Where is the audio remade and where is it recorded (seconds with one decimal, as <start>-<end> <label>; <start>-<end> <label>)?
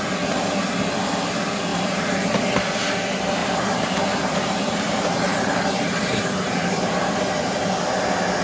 0.0-1.7 recorded; 1.7-2.4 remade; 2.4-3.4 recorded; 3.4-7.1 remade; 7.1-8.4 recorded